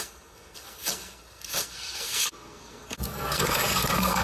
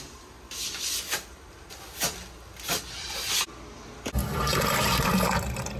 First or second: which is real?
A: second